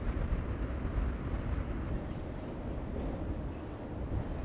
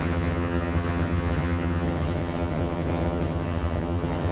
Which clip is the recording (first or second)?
first